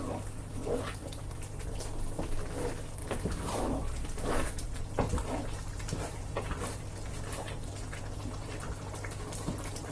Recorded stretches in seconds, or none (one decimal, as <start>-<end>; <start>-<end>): 0.0-1.0; 1.8-3.0; 4.8-5.7; 6.4-9.9